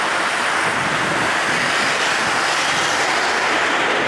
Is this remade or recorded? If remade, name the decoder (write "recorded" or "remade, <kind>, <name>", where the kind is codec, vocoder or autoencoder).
recorded